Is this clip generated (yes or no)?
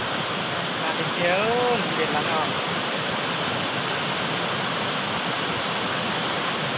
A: no